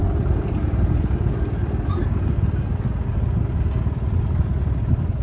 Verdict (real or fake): real